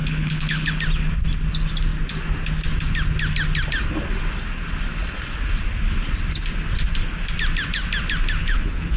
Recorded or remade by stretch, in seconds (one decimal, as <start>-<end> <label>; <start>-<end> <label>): 0.0-0.7 remade; 0.7-8.4 recorded; 8.4-9.0 remade